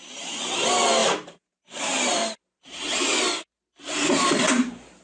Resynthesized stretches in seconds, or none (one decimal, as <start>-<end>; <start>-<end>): 1.0-2.4